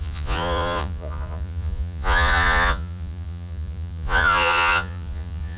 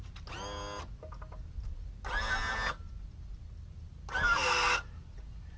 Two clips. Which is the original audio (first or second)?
second